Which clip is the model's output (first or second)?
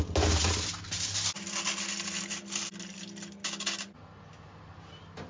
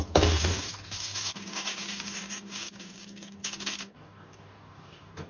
second